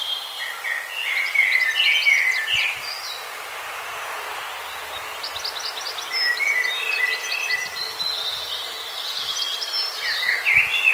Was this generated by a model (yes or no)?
no